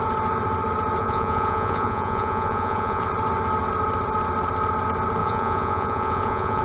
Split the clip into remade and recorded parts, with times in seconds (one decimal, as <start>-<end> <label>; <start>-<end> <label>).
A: 0.0-1.0 recorded; 1.0-3.0 remade; 3.0-5.2 recorded; 5.2-6.6 remade